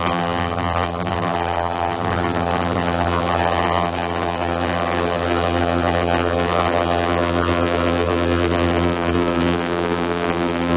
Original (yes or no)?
no